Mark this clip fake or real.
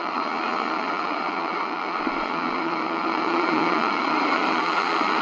fake